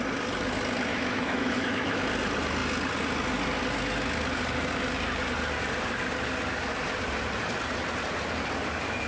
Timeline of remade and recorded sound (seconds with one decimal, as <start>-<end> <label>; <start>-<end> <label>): 0.0-0.9 recorded; 0.9-2.0 remade; 2.0-9.1 recorded